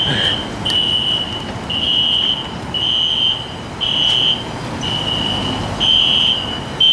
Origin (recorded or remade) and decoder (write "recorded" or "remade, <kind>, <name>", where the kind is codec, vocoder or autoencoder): recorded